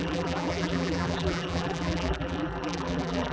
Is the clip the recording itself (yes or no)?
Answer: no